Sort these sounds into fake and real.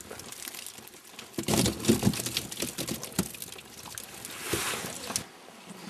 real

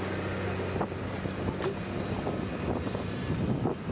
real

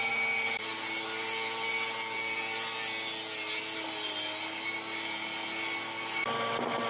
real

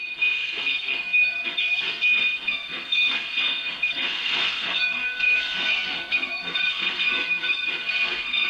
fake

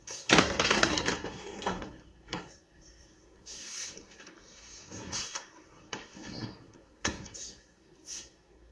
fake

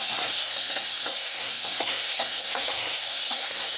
fake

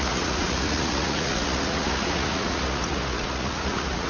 fake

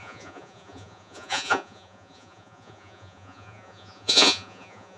fake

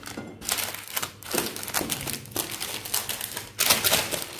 real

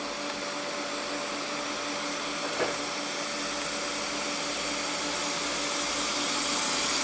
real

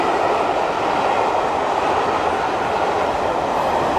real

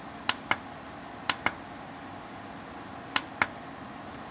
real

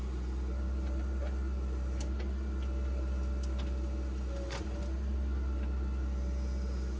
real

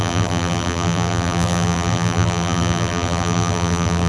fake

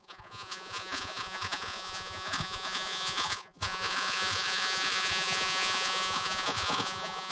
fake